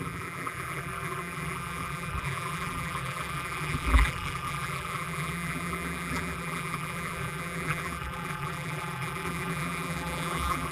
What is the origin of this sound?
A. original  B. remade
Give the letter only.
B